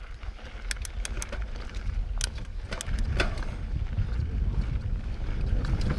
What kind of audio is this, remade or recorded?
recorded